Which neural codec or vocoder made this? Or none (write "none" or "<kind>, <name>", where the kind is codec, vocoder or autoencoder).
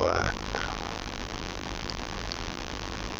vocoder, BigVGAN v2